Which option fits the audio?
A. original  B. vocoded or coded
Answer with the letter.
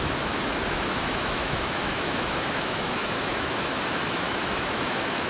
B